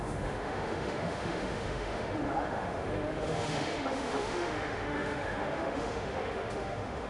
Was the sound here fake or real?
fake